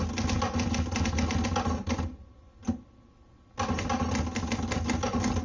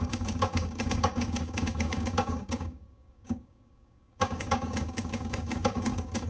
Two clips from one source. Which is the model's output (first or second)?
second